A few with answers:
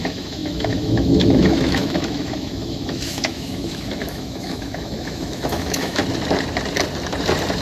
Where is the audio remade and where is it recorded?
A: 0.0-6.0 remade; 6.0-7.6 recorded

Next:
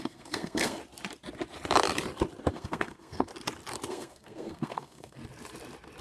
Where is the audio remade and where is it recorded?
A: 0.0-0.8 remade; 0.8-2.5 recorded; 2.5-3.3 remade; 3.3-3.9 recorded; 3.9-5.2 remade; 5.2-6.0 recorded